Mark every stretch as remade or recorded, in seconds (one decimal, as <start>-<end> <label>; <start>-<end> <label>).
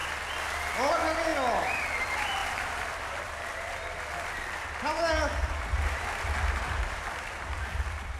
0.0-0.9 recorded; 0.9-1.3 remade; 1.3-2.0 recorded; 2.0-8.2 remade